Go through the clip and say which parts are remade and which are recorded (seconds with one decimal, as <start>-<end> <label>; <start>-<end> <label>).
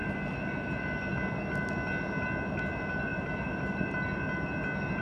0.0-3.1 recorded; 3.1-3.9 remade; 3.9-5.0 recorded